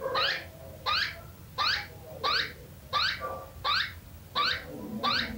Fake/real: real